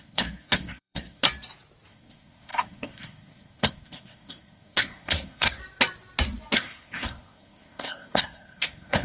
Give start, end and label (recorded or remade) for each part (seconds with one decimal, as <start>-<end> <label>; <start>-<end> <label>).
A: 0.0-1.2 remade; 1.2-1.9 recorded; 1.9-5.6 remade; 5.6-6.5 recorded; 6.5-9.0 remade